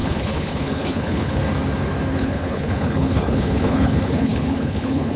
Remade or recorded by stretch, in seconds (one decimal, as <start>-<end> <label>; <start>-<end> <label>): 0.0-1.4 remade; 1.4-2.1 recorded; 2.1-5.2 remade